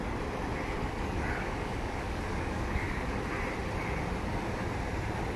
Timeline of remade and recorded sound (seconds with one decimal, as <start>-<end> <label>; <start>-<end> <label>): 0.0-0.8 recorded; 0.8-3.2 remade; 3.2-5.4 recorded